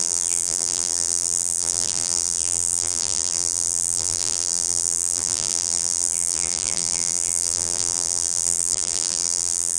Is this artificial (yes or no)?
yes